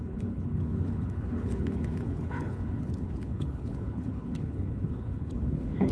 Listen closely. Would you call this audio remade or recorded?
remade